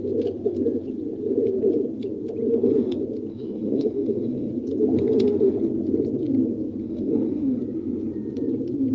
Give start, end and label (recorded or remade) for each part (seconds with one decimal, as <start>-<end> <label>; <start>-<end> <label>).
0.0-3.3 recorded; 3.3-4.5 remade; 4.5-6.8 recorded; 6.8-7.6 remade; 7.6-8.9 recorded